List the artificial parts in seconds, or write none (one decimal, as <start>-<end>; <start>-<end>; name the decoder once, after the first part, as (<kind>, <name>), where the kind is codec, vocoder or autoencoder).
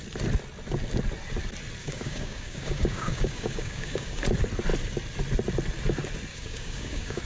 1.8-4.2 (codec, DAC); 6.3-7.2